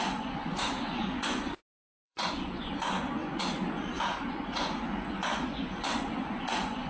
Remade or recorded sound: remade